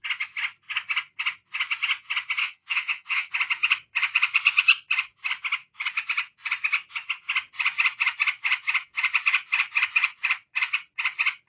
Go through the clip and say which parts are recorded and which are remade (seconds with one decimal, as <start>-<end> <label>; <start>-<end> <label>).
0.0-2.4 recorded; 2.4-3.3 remade; 3.3-11.5 recorded